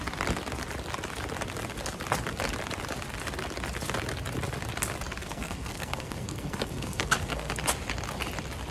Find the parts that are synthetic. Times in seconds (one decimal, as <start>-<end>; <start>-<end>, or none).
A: 5.2-7.5